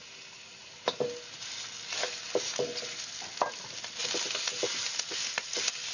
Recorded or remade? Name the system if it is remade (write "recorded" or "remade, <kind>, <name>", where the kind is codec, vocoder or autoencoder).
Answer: recorded